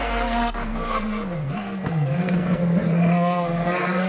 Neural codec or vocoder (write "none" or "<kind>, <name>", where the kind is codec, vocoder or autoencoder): codec, SNAC